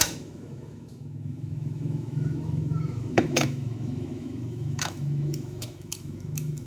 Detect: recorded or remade remade